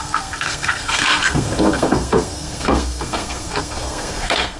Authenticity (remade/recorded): remade